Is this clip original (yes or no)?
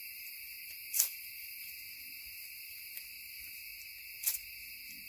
yes